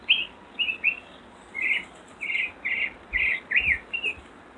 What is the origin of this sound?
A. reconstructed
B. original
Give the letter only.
B